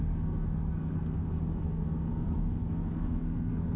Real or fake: fake